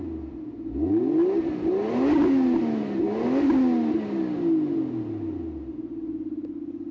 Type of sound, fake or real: real